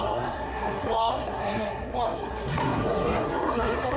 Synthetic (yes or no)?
yes